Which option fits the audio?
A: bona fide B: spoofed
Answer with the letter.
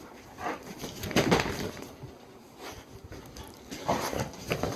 A